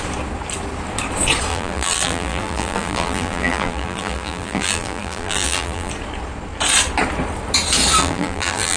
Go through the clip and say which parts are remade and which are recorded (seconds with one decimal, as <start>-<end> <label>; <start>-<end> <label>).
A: 0.0-1.5 recorded; 1.5-5.9 remade; 5.9-8.0 recorded; 8.0-8.8 remade

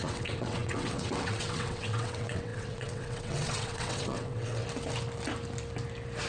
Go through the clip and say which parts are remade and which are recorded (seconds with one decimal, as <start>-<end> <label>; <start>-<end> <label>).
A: 0.0-4.6 remade; 4.6-6.3 recorded

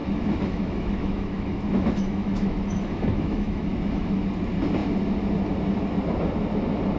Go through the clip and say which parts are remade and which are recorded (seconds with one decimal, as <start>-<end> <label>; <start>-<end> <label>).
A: 0.0-4.2 remade; 4.2-7.0 recorded